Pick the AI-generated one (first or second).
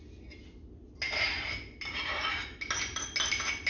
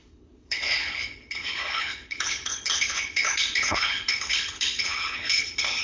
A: second